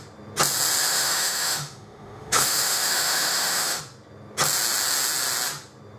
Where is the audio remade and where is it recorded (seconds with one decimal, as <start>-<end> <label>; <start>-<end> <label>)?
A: 0.0-0.9 recorded; 0.9-3.8 remade; 3.8-6.0 recorded